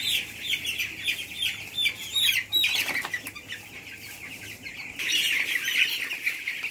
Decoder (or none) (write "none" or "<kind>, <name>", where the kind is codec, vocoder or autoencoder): none